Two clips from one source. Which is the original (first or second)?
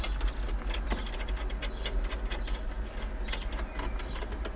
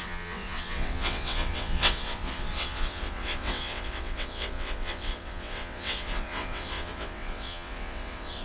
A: first